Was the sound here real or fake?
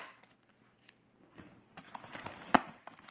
real